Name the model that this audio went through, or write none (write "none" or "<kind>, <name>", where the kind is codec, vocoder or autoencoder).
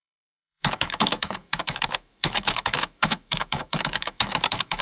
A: autoencoder, DAC-VAE